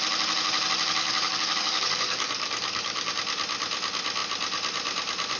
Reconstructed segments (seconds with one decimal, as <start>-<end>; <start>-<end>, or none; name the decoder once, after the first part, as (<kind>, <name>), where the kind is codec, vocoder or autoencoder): 1.0-3.1 (codec, DAC)